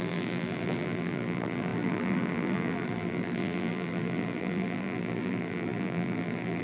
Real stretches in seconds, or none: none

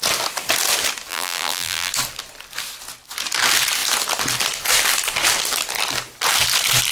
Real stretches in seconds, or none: 0.0-1.1; 1.9-6.9

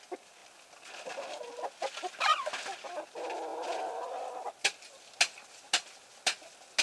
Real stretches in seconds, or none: 0.0-6.8

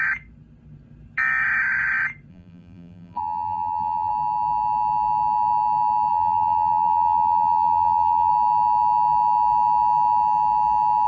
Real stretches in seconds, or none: 0.0-2.3; 4.1-6.1; 8.3-11.1

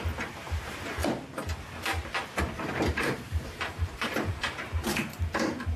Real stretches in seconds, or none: 1.0-2.4